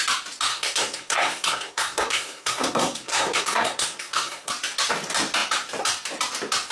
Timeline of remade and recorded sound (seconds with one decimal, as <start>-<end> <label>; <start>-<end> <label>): 0.0-0.5 recorded; 0.5-4.5 remade; 4.5-6.7 recorded